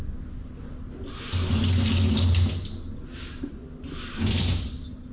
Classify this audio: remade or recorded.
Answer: recorded